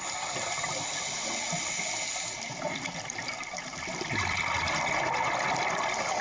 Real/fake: real